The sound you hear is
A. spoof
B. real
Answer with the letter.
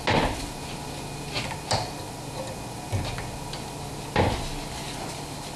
B